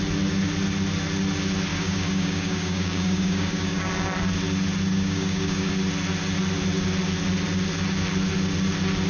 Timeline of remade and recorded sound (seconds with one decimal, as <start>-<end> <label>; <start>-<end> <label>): 0.0-1.7 recorded; 1.7-3.9 remade; 3.9-4.9 recorded; 4.9-5.7 remade; 5.7-9.1 recorded